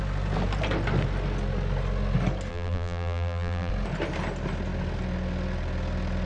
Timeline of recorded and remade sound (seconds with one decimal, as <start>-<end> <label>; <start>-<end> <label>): 0.0-2.5 recorded; 2.5-3.7 remade; 3.7-6.3 recorded